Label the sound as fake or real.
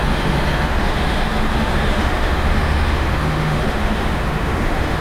fake